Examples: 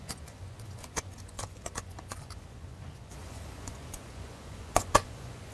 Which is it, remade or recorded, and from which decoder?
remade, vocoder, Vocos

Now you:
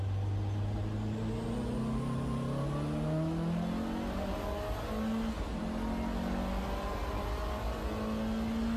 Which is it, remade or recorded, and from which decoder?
recorded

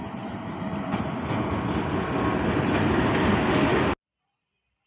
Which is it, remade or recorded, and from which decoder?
recorded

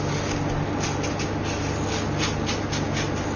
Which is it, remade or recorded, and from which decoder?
recorded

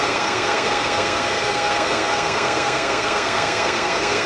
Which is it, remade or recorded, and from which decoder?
remade, codec, SNAC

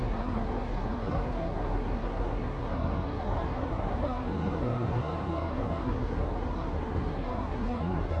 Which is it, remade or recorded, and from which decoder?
remade, codec, SNAC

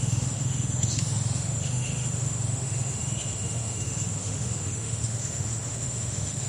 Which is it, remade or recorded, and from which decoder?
remade, autoencoder, DAC-VAE